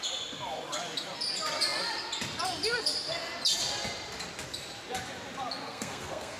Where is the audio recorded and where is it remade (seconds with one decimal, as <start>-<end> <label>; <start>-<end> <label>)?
0.0-5.6 recorded; 5.6-6.4 remade